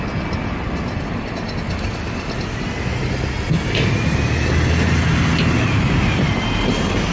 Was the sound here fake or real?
real